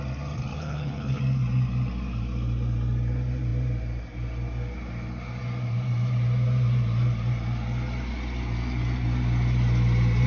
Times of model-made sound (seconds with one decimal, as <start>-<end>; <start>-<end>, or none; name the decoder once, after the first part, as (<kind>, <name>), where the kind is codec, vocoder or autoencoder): 0.5-1.2 (codec, HILCodec)